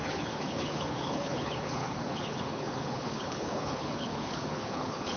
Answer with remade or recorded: remade